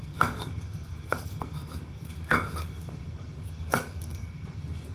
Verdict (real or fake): fake